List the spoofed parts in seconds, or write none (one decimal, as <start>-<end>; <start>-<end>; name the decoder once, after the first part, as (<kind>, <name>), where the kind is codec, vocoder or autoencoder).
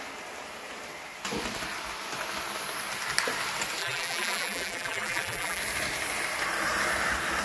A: 3.8-5.6 (vocoder, BigVGAN v2)